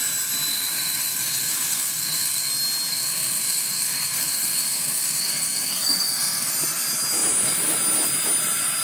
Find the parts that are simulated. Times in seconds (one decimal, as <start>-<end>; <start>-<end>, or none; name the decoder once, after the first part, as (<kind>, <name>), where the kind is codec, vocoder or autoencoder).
0.5-2.5 (codec, SNAC); 2.9-6.5